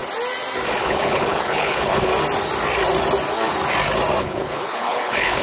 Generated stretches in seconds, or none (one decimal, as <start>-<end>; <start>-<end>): 0.8-2.1; 4.2-5.4